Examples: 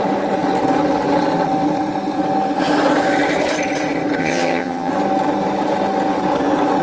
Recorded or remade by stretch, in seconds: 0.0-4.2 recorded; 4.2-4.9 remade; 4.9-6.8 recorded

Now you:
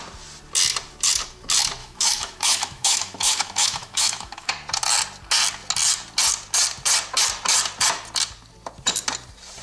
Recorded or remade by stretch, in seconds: 0.0-1.8 recorded; 1.8-4.5 remade; 4.5-9.6 recorded

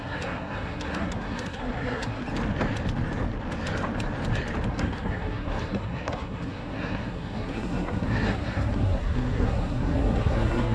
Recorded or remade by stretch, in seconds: 0.0-2.2 remade; 2.2-4.7 recorded; 4.7-10.7 remade

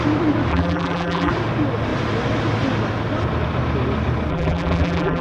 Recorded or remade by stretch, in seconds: 0.0-0.5 recorded; 0.5-1.3 remade; 1.3-4.3 recorded; 4.3-5.2 remade

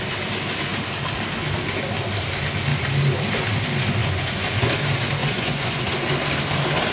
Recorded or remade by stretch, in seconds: 0.0-4.0 recorded; 4.0-4.7 remade; 4.7-5.2 recorded; 5.2-5.8 remade; 5.8-6.9 recorded

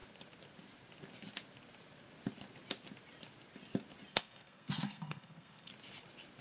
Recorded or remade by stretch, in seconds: 0.0-4.1 recorded; 4.1-5.7 remade; 5.7-6.4 recorded

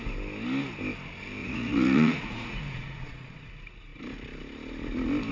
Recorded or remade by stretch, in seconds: 0.0-1.4 recorded; 1.4-3.5 remade; 3.5-5.3 recorded